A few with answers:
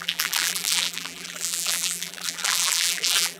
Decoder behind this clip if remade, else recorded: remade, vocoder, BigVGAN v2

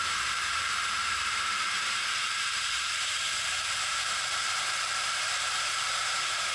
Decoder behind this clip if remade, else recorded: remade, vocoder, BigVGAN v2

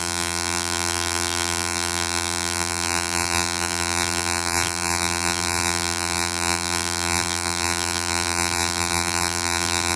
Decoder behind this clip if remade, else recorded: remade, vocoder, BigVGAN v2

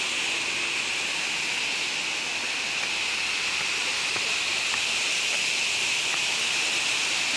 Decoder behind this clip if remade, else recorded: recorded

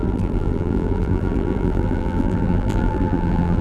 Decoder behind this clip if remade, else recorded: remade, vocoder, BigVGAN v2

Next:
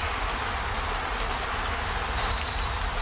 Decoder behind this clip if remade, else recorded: recorded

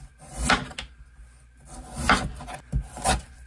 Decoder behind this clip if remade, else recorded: recorded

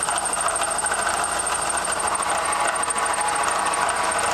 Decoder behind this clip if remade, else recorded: recorded